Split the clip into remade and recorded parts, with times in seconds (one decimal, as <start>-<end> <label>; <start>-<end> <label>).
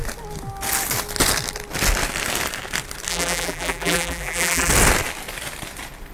0.0-3.1 recorded; 3.1-4.7 remade; 4.7-6.1 recorded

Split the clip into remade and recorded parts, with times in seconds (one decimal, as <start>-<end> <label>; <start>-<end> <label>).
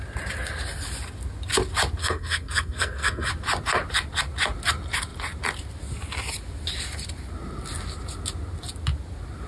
0.0-2.0 recorded; 2.0-3.3 remade; 3.3-9.5 recorded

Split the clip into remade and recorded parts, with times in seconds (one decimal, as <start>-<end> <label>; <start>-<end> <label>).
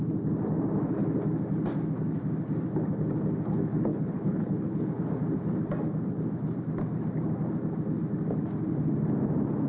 0.0-3.9 recorded; 3.9-5.0 remade; 5.0-9.7 recorded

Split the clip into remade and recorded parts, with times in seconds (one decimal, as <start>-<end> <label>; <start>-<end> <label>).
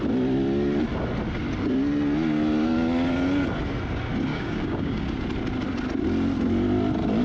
0.0-4.3 recorded; 4.3-5.1 remade; 5.1-7.2 recorded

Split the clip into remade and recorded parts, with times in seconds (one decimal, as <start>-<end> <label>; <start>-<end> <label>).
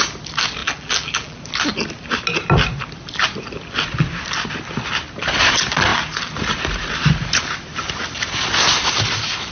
0.0-0.6 recorded; 0.6-1.4 remade; 1.4-9.5 recorded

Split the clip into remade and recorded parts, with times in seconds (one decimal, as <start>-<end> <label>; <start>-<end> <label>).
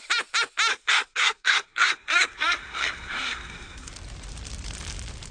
0.0-0.7 recorded; 0.7-3.9 remade; 3.9-5.3 recorded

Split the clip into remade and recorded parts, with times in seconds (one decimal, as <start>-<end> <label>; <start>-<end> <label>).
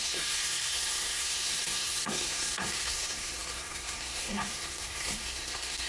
0.0-5.9 remade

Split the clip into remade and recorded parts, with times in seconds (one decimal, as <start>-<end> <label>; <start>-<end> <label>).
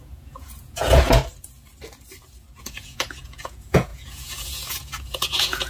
0.0-1.2 remade; 1.2-2.6 recorded; 2.6-5.7 remade